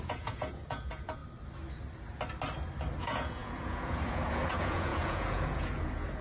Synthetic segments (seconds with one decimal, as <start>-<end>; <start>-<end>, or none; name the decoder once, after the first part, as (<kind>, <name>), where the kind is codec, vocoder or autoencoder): 0.0-1.2 (vocoder, Vocos); 3.0-6.2